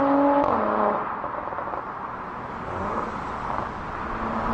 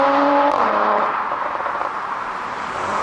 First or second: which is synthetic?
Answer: second